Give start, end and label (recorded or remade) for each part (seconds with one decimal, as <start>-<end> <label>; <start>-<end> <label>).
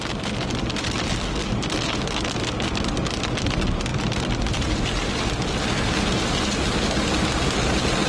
0.0-8.1 recorded